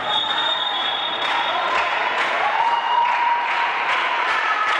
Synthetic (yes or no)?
yes